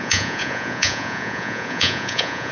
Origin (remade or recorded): remade